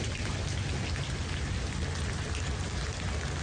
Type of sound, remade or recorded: recorded